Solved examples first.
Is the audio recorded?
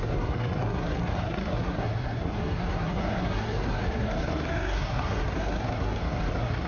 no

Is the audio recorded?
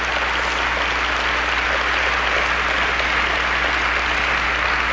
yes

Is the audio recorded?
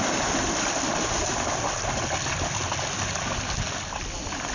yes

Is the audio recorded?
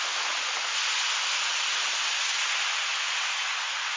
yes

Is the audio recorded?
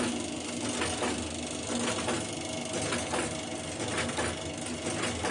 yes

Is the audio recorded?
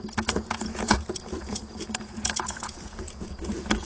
no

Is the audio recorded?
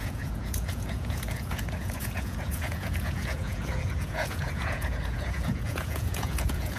no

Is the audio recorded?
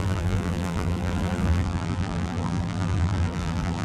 no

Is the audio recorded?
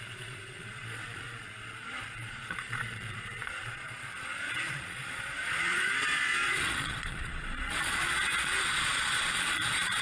no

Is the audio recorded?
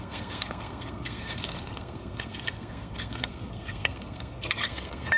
no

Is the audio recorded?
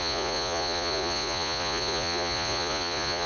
no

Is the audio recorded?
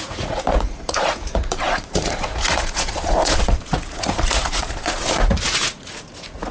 no